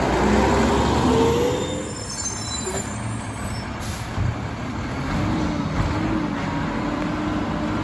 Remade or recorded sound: recorded